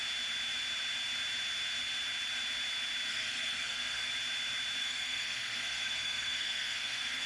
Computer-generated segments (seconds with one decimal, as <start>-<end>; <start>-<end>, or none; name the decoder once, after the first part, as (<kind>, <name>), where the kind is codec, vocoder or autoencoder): 3.1-4.1 (codec, SNAC); 4.8-7.3